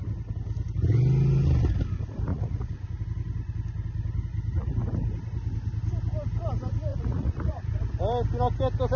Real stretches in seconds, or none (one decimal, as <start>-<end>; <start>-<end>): 0.0-2.3; 3.0-6.9; 7.7-9.0